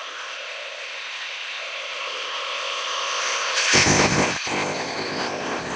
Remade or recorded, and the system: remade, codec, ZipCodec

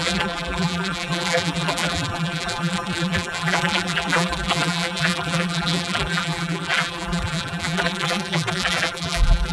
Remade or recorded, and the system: remade, vocoder, BigVGAN v2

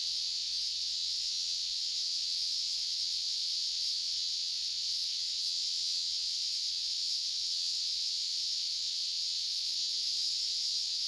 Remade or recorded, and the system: remade, vocoder, WaveNeXt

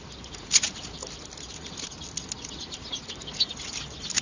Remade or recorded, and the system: recorded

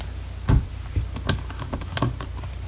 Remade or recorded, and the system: recorded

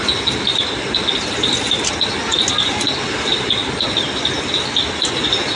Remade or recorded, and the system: recorded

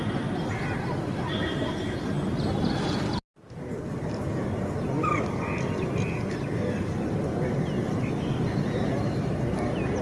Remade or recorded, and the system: recorded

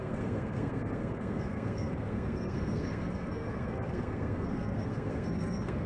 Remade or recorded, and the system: remade, codec, SNAC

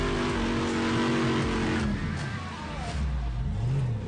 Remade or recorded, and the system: recorded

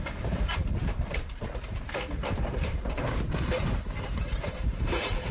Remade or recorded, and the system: remade, vocoder, BigVGAN v2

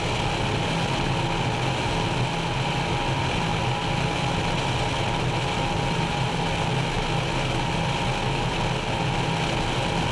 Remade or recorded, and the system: recorded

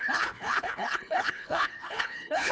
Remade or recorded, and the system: remade, codec, HILCodec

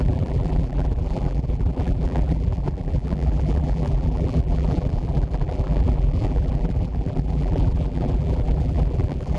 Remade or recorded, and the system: remade, vocoder, BigVGAN v2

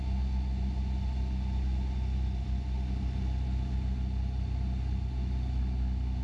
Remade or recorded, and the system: recorded